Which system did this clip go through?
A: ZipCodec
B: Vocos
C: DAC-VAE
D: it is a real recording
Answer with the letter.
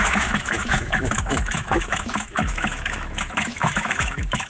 C